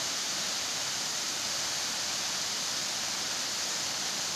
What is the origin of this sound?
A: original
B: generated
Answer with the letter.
B